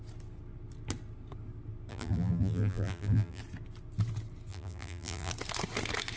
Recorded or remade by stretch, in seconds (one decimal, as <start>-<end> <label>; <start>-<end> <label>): 0.0-1.9 recorded; 1.9-3.4 remade; 3.4-4.5 recorded; 4.5-5.3 remade; 5.3-6.2 recorded